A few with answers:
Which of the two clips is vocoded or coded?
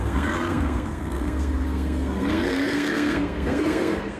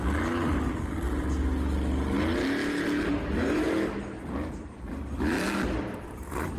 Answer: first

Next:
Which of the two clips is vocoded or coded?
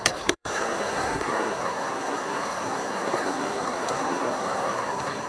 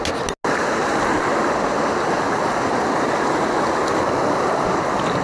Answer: first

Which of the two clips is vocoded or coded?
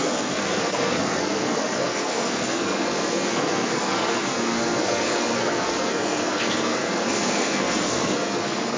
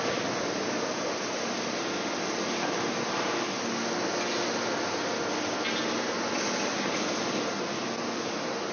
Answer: first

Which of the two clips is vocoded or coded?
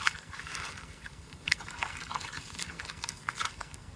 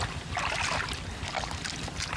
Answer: first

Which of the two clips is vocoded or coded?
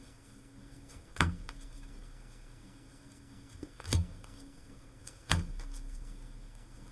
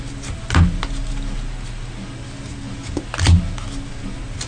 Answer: first